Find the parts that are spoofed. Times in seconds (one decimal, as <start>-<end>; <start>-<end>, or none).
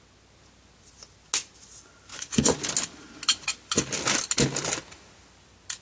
2.1-2.6